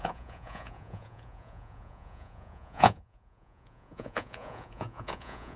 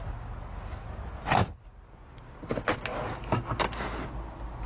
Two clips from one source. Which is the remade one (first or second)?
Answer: first